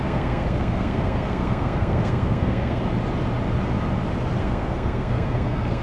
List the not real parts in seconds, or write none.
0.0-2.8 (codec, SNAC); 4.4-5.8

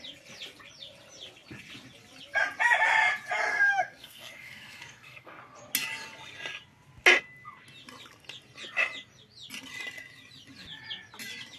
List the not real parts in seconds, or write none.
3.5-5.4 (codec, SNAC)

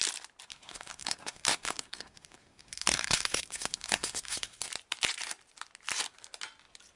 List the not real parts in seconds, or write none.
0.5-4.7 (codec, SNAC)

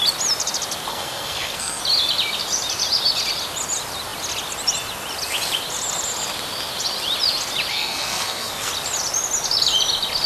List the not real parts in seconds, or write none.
0.9-1.8 (codec, SNAC); 7.7-8.7